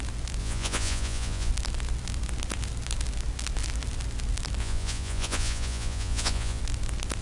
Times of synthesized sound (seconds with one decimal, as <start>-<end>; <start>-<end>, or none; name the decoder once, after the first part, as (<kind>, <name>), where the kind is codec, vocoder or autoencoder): 0.4-1.5 (vocoder, Vocos); 4.6-6.6